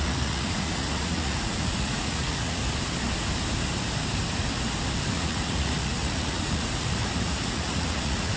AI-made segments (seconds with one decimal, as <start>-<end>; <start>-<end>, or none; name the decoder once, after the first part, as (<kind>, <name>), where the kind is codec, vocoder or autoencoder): 0.0-2.6 (vocoder, Vocos); 5.1-8.4